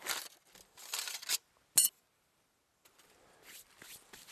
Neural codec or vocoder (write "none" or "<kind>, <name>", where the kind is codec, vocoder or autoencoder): none